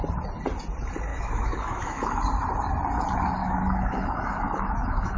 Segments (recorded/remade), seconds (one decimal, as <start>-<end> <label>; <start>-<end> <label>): 0.0-1.1 recorded; 1.1-2.2 remade; 2.2-3.4 recorded; 3.4-5.2 remade